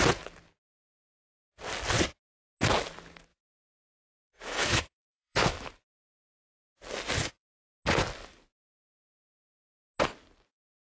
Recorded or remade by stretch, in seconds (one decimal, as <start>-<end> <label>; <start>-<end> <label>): 0.0-3.3 recorded; 3.3-5.7 remade; 5.7-10.9 recorded